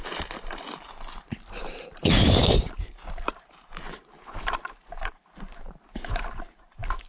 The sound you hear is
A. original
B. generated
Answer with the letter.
B